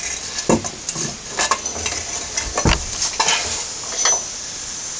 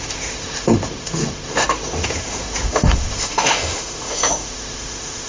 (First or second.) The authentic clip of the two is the first